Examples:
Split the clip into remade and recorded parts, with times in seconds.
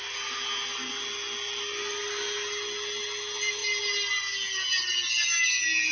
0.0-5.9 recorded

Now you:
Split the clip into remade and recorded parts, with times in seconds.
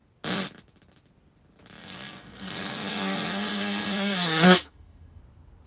0.0-1.8 recorded; 1.8-5.2 remade; 5.2-5.7 recorded